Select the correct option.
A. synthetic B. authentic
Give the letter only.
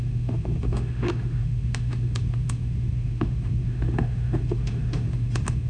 A